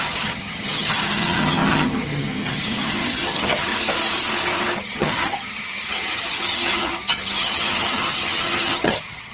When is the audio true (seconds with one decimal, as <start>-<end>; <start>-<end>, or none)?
3.7-4.8